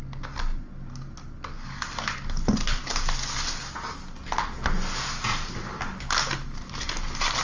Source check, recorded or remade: recorded